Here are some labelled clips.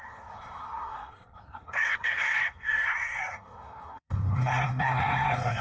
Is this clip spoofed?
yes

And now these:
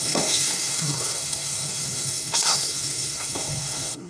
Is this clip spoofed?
yes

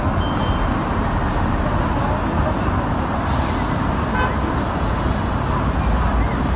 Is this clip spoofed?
no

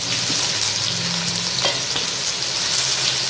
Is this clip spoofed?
no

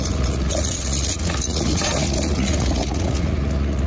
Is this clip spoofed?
yes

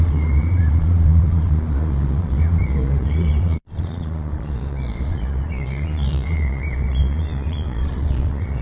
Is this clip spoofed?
yes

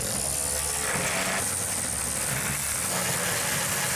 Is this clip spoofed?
no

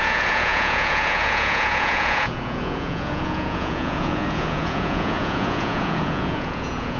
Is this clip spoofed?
yes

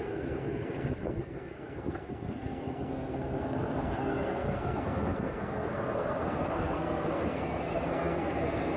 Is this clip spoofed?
yes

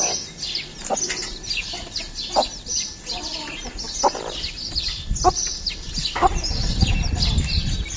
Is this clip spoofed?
no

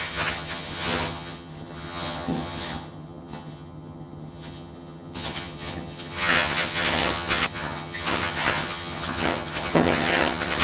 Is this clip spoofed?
yes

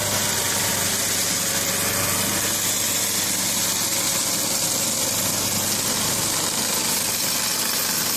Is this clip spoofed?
no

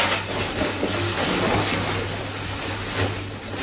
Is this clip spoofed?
no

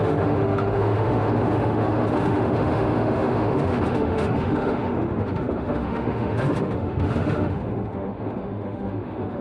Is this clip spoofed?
yes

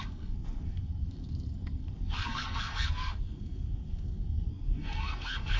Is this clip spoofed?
yes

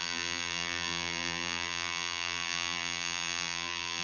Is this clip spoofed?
yes